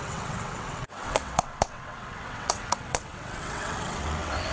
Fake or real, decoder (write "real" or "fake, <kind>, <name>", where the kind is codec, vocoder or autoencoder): fake, vocoder, WaveNeXt